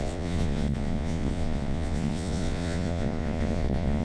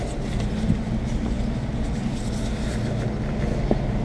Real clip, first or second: second